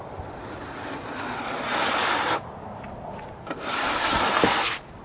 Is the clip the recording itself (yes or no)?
yes